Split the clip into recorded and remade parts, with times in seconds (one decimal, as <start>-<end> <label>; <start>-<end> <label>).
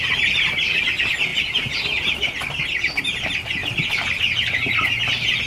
0.0-3.6 recorded; 3.6-4.3 remade; 4.3-5.5 recorded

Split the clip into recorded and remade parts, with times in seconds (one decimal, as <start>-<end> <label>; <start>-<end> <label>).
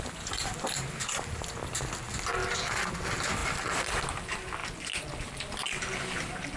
0.0-6.6 recorded